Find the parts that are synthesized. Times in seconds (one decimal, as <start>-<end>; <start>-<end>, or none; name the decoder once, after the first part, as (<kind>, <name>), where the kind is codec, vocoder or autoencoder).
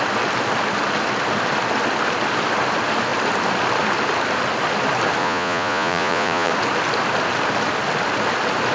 5.2-6.5 (vocoder, Vocos)